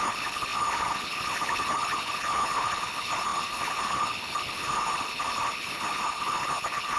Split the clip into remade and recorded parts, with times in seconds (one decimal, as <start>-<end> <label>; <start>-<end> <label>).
0.0-7.0 remade

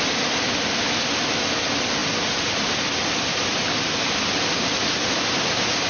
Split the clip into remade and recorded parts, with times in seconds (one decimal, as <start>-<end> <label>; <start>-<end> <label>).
0.0-5.9 recorded

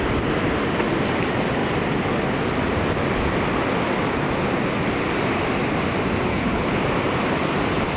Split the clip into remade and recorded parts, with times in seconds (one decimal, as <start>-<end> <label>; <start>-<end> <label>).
0.0-6.3 recorded; 6.3-6.8 remade; 6.8-8.0 recorded